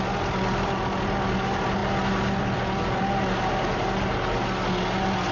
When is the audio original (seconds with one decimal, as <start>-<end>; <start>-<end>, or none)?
0.0-5.3

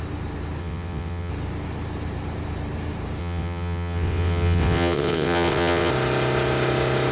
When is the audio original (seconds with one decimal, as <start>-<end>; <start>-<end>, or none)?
0.0-0.6; 1.3-3.2; 5.9-7.1